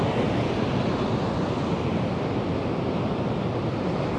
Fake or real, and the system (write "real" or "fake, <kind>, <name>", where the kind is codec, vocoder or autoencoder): real